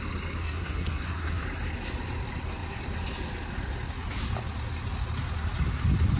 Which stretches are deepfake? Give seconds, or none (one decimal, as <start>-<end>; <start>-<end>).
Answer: 0.4-1.4